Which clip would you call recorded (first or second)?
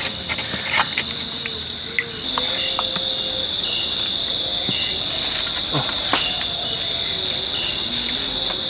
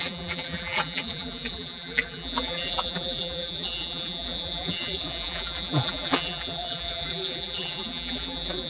first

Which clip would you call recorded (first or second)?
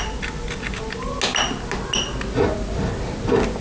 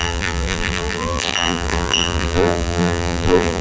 first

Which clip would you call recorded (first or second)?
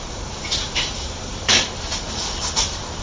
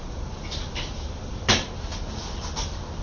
second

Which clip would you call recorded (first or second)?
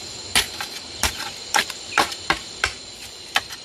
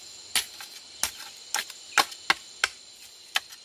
second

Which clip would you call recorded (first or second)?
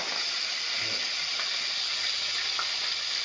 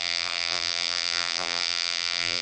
first